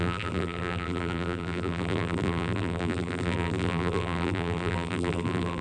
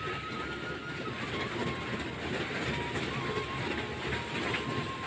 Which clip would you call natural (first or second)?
second